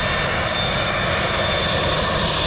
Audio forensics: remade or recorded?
recorded